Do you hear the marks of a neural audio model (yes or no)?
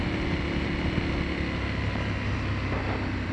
no